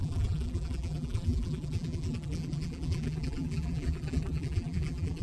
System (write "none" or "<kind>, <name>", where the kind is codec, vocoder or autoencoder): vocoder, BigVGAN v2